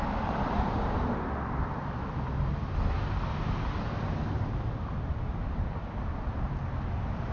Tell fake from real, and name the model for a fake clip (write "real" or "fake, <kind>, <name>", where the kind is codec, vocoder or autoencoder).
real